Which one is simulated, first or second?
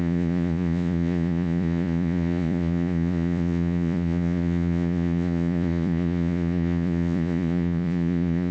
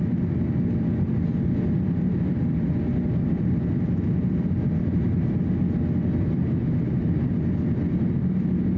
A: first